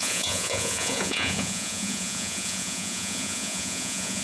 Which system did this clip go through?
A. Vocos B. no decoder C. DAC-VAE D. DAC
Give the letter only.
A